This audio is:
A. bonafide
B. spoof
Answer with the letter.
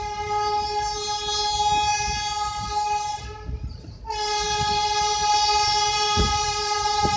A